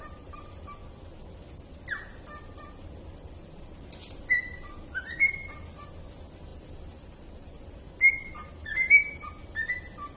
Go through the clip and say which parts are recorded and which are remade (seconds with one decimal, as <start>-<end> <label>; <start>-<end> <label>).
0.0-10.2 recorded